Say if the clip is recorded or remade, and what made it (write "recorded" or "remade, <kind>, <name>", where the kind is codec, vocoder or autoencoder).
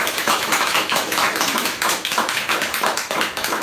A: remade, autoencoder, DAC-VAE